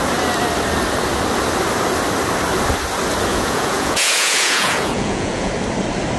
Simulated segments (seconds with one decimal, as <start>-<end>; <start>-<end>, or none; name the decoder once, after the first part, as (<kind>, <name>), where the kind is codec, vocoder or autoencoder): 3.3-5.5 (vocoder, Vocos)